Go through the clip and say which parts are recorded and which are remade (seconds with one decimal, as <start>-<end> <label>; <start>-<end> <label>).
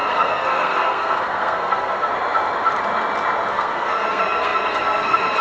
0.0-2.1 remade; 2.1-3.5 recorded; 3.5-5.4 remade